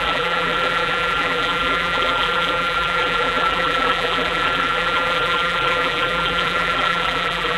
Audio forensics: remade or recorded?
remade